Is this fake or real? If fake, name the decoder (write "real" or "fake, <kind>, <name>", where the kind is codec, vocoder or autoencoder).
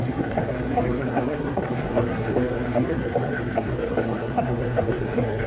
fake, codec, SNAC